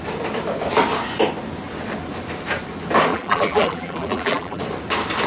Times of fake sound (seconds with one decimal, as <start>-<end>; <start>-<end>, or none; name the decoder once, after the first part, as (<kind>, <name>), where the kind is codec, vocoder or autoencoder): 3.1-4.6 (vocoder, BigVGAN v2)